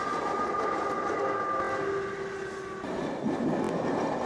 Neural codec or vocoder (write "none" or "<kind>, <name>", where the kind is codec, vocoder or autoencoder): none